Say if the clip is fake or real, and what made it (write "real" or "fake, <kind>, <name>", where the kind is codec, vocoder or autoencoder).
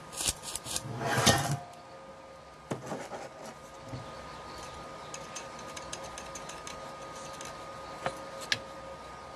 real